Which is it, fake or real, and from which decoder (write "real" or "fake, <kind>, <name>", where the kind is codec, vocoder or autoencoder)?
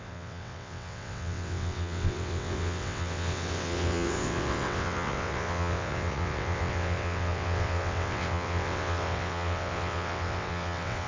fake, vocoder, WaveNeXt